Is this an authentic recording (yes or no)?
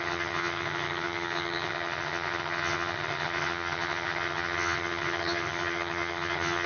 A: no